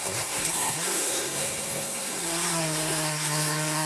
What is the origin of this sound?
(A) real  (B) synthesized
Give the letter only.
B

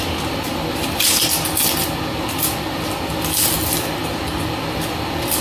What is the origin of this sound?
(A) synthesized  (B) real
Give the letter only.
B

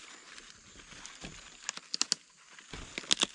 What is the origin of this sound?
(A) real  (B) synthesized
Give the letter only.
A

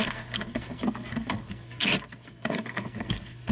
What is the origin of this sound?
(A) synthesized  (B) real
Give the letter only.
A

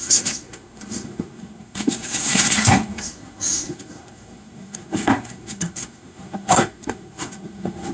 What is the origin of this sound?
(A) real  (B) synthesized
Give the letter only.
B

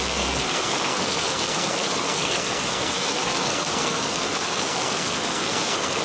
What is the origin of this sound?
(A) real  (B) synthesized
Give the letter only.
B